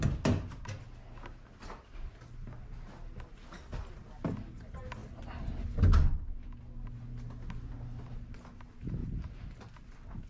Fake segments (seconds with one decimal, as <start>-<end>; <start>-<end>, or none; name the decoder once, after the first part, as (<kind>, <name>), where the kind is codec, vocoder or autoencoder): none